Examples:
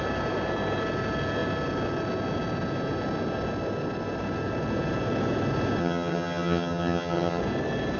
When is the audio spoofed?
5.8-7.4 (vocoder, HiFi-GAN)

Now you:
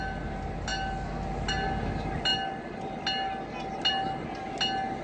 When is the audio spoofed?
none